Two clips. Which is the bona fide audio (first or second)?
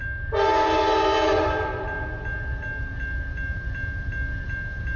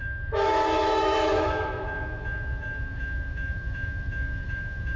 first